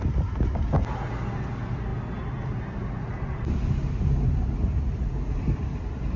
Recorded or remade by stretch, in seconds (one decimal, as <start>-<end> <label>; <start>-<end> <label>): 0.0-6.2 recorded